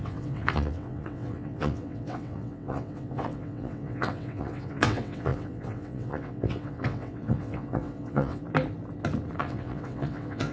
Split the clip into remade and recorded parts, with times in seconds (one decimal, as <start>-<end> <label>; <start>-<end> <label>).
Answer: 0.0-8.4 remade; 8.4-9.4 recorded; 9.4-10.5 remade